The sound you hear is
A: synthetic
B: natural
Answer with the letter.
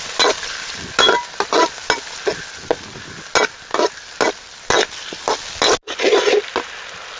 B